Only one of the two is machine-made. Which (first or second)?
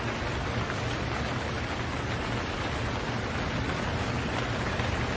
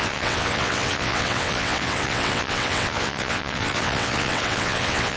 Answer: second